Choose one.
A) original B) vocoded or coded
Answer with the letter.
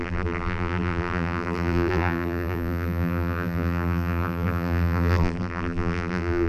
B